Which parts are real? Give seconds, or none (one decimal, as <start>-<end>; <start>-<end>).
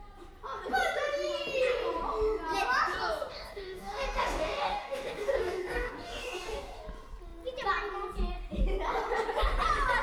0.0-3.3; 6.8-10.0